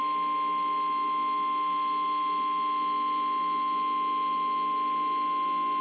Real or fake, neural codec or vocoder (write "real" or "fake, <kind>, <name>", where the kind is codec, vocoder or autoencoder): real